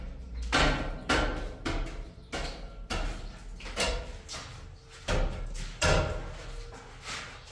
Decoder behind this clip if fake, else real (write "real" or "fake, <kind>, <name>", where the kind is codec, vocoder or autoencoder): real